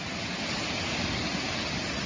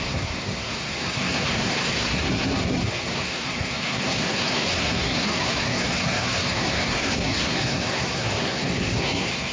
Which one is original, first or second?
first